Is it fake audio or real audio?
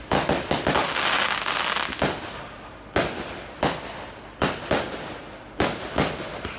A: real